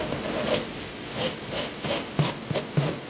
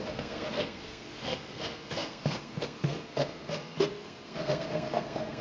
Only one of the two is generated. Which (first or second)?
second